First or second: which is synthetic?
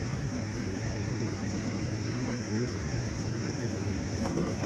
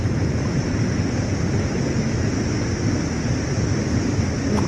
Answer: first